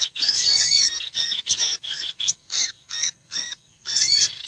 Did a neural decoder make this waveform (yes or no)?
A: yes